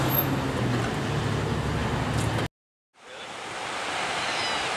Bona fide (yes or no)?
yes